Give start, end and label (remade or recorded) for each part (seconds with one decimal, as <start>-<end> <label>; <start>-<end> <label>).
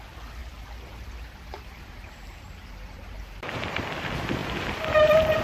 0.0-0.4 recorded; 0.4-3.6 remade; 3.6-5.4 recorded